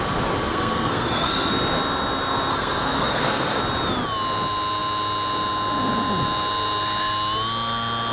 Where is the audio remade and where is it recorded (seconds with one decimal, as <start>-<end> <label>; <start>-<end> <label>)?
0.0-0.5 recorded; 0.5-1.5 remade; 1.5-2.5 recorded; 2.5-3.6 remade; 3.6-8.1 recorded